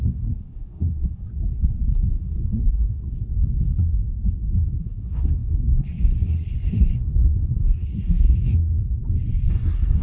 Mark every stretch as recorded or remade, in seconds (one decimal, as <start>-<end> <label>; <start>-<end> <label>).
0.0-1.3 remade; 1.3-2.1 recorded; 2.1-3.0 remade; 3.0-4.8 recorded; 4.8-9.0 remade; 9.0-9.5 recorded; 9.5-10.0 remade